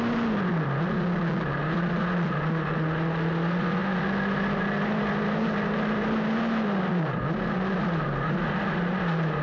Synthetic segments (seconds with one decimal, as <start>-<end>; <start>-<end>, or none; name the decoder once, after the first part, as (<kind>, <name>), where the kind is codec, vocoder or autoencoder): none